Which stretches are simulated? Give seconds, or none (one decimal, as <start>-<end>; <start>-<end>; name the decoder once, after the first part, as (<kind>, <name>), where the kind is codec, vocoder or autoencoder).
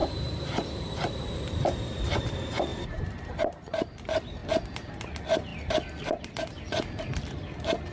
0.0-1.2 (vocoder, BigVGAN v2); 2.7-3.9